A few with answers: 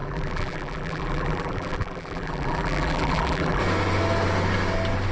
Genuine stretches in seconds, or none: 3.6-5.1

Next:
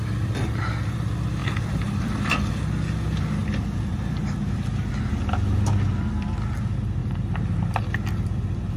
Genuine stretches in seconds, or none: 0.0-1.4; 2.5-3.4; 4.9-7.0; 7.7-8.8